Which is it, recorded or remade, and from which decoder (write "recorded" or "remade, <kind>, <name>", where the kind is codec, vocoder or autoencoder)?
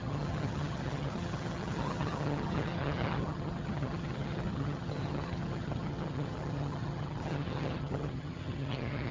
remade, vocoder, HiFi-GAN